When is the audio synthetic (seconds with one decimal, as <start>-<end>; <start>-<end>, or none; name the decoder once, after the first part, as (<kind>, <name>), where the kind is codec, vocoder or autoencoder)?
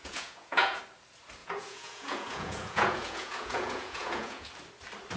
0.0-0.8 (vocoder, Vocos); 1.4-4.5